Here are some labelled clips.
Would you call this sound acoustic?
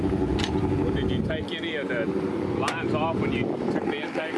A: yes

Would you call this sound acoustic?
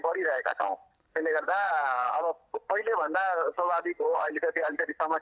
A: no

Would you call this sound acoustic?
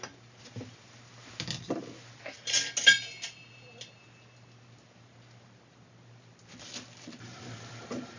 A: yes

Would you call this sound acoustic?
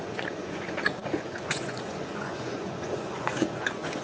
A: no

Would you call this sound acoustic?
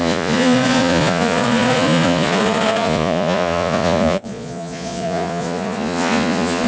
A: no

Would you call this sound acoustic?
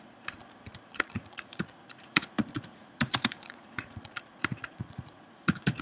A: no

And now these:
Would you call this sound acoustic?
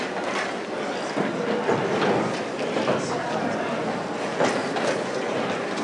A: yes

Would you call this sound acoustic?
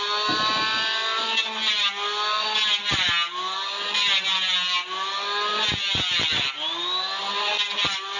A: yes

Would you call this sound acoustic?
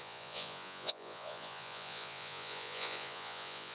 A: no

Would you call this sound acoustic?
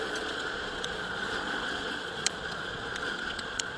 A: no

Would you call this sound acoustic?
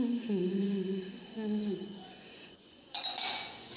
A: no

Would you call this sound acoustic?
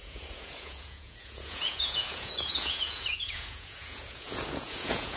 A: no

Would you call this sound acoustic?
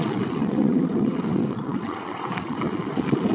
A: no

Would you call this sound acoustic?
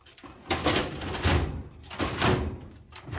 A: yes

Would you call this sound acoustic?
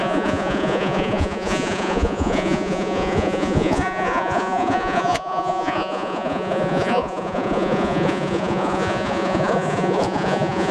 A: no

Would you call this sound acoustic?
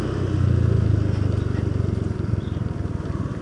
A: yes